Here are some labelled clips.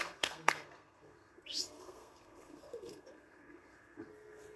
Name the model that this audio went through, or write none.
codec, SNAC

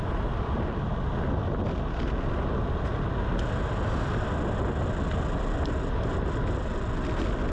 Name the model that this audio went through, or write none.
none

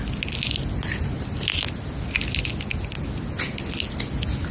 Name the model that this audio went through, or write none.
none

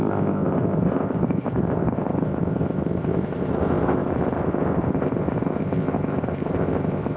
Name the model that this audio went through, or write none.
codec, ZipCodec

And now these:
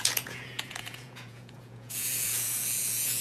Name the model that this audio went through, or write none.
vocoder, Vocos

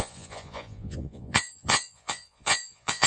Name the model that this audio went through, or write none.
vocoder, Vocos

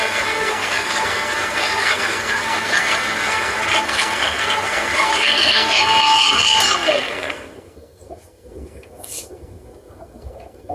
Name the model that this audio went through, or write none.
codec, SNAC